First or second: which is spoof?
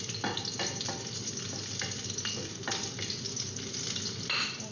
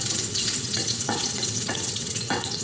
second